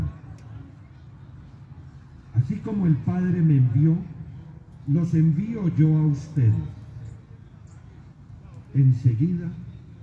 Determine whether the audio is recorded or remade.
recorded